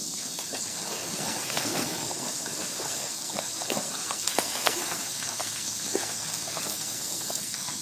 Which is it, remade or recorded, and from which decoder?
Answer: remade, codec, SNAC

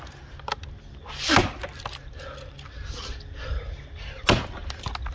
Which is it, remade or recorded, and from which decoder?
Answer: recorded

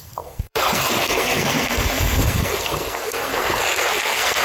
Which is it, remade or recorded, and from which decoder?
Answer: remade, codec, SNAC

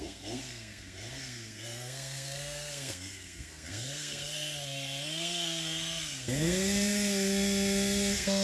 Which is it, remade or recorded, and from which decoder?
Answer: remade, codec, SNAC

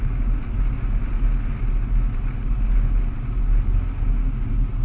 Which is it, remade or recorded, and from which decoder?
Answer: recorded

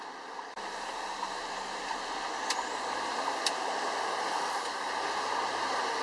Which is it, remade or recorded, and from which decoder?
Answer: recorded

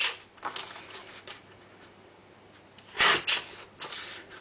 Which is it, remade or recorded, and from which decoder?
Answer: recorded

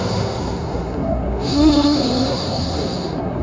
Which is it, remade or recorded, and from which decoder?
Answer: remade, codec, SNAC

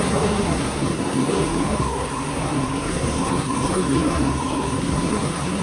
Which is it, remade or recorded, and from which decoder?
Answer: remade, codec, SNAC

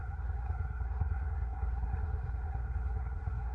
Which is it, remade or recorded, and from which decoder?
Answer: remade, codec, SNAC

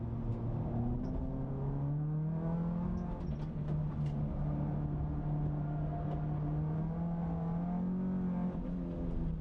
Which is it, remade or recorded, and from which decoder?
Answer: recorded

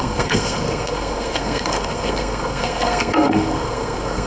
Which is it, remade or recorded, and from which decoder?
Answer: remade, codec, SNAC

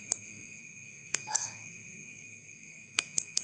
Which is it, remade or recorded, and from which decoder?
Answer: remade, codec, SNAC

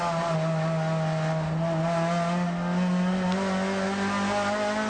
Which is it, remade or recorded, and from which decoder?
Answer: recorded